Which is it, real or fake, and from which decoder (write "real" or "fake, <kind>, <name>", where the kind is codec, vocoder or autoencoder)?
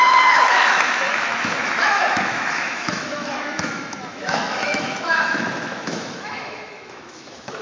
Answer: fake, autoencoder, DAC-VAE